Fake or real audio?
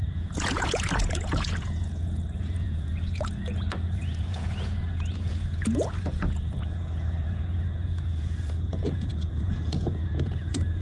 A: fake